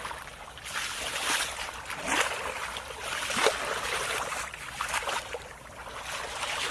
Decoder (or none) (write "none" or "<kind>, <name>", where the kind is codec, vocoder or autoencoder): none